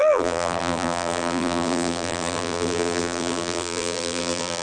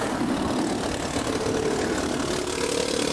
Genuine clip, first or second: second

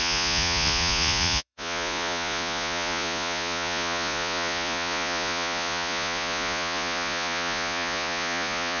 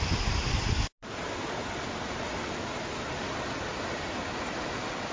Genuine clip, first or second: second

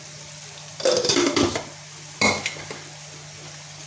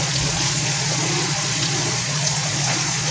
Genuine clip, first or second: first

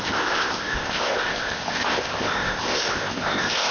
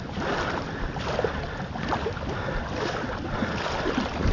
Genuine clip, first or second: second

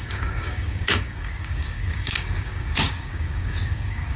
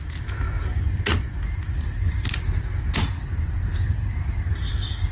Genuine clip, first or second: second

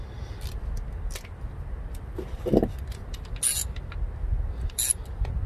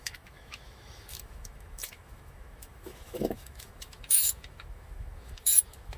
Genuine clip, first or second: first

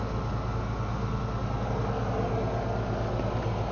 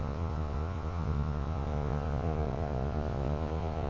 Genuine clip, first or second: first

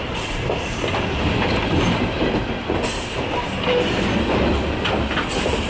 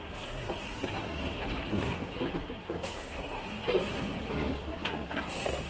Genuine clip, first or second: first